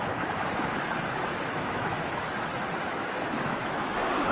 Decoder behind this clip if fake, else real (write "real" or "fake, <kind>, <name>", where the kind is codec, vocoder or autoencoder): fake, autoencoder, DAC-VAE